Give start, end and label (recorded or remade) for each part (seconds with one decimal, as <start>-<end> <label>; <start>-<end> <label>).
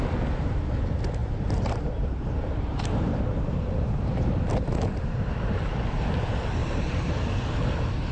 0.0-1.2 recorded; 1.2-4.5 remade; 4.5-6.6 recorded; 6.6-7.1 remade; 7.1-8.1 recorded